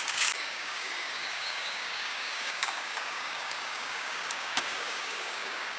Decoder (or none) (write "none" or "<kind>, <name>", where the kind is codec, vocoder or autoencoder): codec, DAC